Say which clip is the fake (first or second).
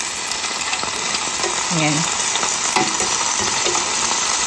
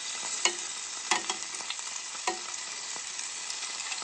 second